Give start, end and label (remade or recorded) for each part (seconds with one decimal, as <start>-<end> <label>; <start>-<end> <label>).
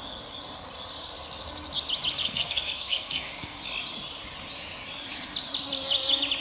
0.0-2.2 recorded; 2.2-3.6 remade; 3.6-6.4 recorded